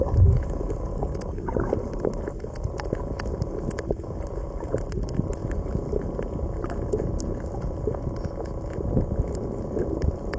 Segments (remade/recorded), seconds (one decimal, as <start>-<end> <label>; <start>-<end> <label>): 0.0-0.9 recorded; 0.9-1.6 remade; 1.6-10.4 recorded

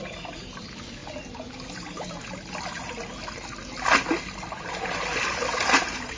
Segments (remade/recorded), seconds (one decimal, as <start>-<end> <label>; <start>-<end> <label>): 0.0-6.2 recorded

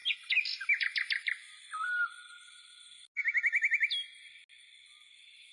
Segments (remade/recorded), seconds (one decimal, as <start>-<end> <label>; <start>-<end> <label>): 0.0-5.5 recorded

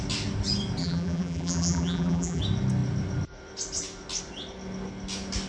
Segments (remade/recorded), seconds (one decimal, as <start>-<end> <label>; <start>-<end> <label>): 0.0-0.8 recorded; 0.8-2.4 remade; 2.4-5.5 recorded

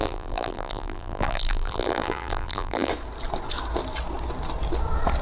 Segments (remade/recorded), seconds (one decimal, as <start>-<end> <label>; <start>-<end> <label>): 0.0-2.9 remade; 2.9-5.2 recorded

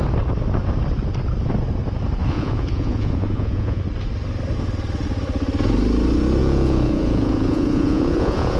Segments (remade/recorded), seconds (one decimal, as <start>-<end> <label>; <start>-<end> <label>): 0.0-2.2 recorded; 2.2-3.8 remade; 3.8-6.4 recorded; 6.4-8.6 remade

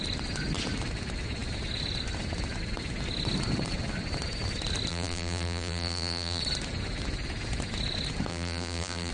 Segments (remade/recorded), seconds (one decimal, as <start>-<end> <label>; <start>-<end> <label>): 0.0-4.9 recorded; 4.9-6.4 remade; 6.4-8.3 recorded; 8.3-9.1 remade

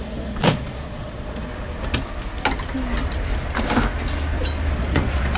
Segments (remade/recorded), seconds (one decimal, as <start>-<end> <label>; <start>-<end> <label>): 0.0-1.5 remade; 1.5-4.7 recorded; 4.7-5.4 remade